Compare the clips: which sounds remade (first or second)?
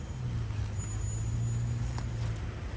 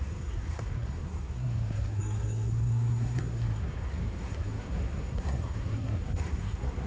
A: second